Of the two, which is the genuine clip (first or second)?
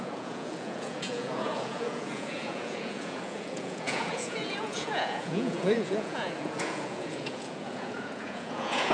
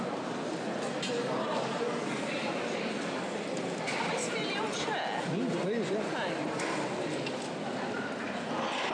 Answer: second